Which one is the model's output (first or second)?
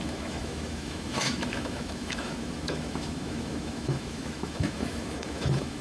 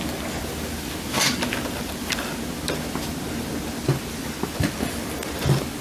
first